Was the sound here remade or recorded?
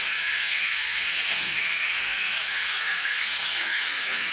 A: remade